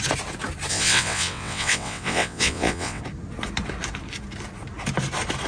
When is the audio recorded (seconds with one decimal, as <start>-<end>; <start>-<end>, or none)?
0.0-0.7; 3.0-5.5